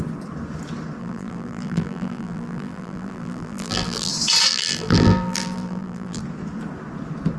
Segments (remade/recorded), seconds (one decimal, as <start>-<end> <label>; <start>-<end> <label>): 0.0-1.0 recorded; 1.0-4.1 remade; 4.1-4.5 recorded; 4.5-6.2 remade; 6.2-7.4 recorded